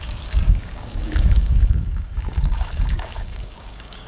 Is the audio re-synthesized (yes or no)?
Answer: yes